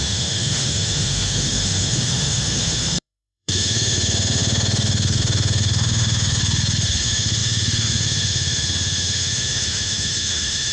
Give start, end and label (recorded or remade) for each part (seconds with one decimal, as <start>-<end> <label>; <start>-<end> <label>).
0.0-6.4 remade; 6.4-7.0 recorded; 7.0-10.7 remade